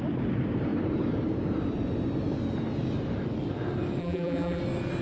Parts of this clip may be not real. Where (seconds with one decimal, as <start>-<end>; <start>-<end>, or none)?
4.0-4.6